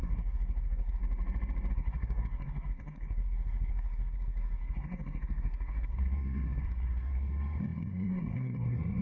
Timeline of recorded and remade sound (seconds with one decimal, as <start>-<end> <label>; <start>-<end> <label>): 0.0-1.0 remade; 1.0-1.7 recorded; 1.7-9.0 remade